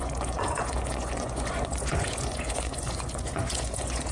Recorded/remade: remade